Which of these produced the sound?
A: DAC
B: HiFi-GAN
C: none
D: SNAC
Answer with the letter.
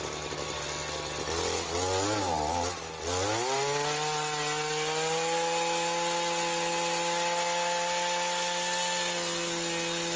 C